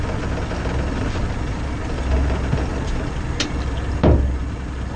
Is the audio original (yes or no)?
yes